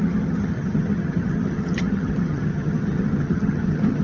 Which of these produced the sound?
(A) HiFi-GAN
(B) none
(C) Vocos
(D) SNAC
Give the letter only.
A